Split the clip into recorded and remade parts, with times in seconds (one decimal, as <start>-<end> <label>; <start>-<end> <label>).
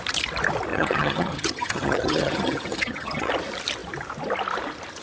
0.0-0.7 recorded; 0.7-3.3 remade; 3.3-5.0 recorded